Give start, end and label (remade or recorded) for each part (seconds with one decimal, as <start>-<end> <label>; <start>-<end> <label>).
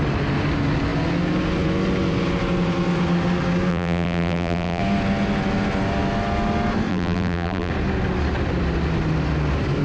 0.0-3.7 recorded; 3.7-4.8 remade; 4.8-6.9 recorded; 6.9-7.7 remade; 7.7-9.8 recorded